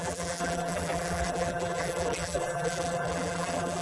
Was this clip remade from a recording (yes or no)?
yes